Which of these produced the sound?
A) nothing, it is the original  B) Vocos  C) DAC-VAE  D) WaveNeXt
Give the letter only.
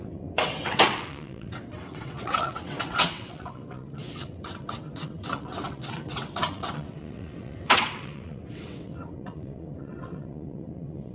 D